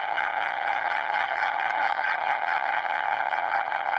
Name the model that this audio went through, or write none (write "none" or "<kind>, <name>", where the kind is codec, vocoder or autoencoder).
vocoder, HiFi-GAN